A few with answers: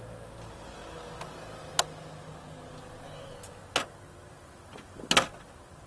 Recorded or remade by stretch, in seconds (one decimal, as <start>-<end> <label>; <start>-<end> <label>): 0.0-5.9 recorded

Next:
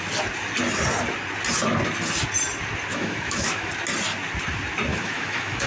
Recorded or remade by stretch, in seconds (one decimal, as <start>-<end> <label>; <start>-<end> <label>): 0.0-2.9 recorded; 2.9-3.7 remade; 3.7-4.9 recorded; 4.9-5.7 remade

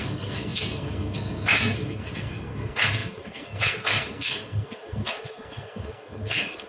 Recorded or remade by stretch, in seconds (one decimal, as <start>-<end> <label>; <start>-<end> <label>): 0.0-6.7 remade